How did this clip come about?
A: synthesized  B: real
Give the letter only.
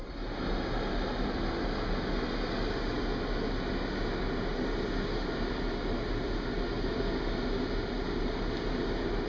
B